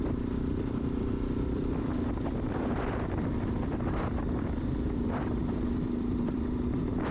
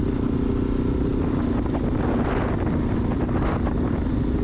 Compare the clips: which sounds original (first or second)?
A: second